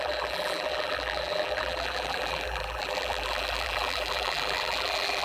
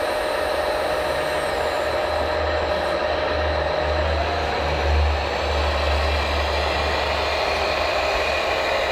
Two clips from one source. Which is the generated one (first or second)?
first